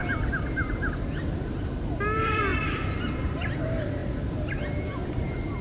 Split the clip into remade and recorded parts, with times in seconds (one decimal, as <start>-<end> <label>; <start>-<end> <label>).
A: 0.0-5.6 remade